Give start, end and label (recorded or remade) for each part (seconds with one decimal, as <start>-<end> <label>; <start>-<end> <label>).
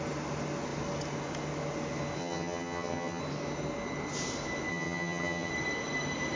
0.0-2.2 recorded; 2.2-3.2 remade; 3.2-4.7 recorded; 4.7-5.5 remade; 5.5-6.4 recorded